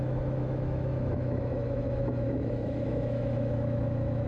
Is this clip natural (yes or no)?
no